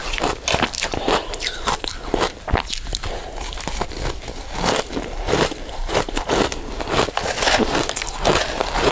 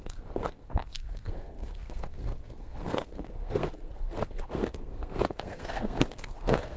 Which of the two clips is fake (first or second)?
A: second